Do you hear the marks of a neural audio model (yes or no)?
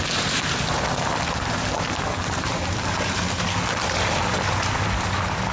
no